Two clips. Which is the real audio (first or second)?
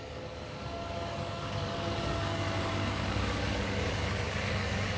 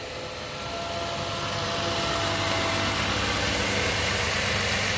second